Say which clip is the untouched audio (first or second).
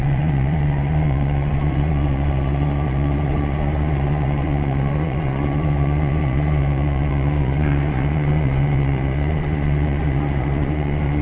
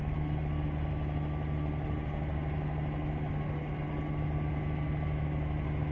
second